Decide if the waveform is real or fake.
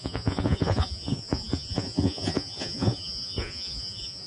fake